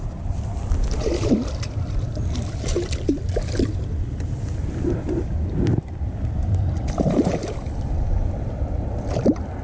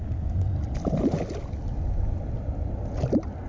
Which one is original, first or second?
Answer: second